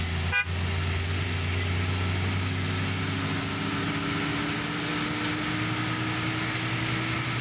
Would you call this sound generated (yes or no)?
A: no